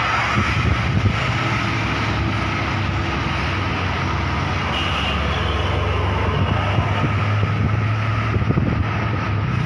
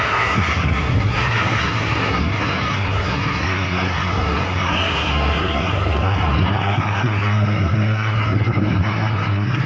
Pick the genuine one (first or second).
first